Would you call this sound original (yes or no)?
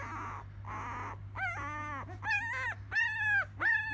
yes